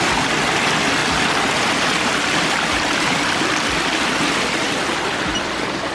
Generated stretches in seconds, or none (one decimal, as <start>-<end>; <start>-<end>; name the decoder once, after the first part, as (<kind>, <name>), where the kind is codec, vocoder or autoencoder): none